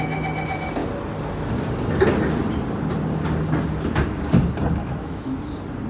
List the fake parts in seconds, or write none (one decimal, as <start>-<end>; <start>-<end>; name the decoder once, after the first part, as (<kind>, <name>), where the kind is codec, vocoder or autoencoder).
4.8-5.4 (autoencoder, DAC-VAE)

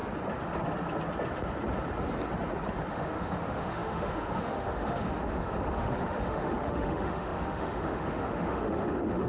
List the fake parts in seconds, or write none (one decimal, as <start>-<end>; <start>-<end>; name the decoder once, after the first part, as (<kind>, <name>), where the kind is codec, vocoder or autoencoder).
2.9-9.3 (autoencoder, DAC-VAE)

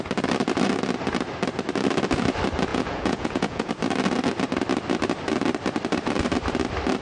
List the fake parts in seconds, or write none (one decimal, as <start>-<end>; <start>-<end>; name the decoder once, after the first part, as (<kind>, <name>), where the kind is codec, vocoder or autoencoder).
2.7-3.7 (vocoder, Vocos)

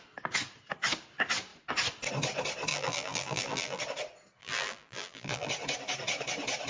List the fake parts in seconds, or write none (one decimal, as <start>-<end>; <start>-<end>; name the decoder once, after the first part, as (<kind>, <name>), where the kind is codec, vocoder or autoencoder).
2.7-3.8 (vocoder, BigVGAN v2); 4.4-5.5

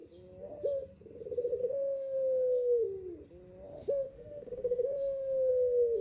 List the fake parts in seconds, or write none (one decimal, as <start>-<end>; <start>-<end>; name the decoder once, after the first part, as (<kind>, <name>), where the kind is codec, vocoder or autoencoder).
1.6-2.8 (autoencoder, DAC-VAE); 3.7-5.5

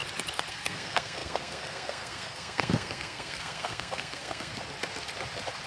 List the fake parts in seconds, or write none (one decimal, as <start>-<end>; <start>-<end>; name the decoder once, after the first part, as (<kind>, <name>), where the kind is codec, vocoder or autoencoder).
0.5-4.5 (codec, SNAC)